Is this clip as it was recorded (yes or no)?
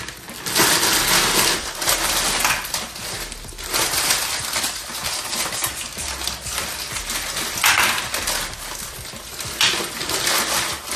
yes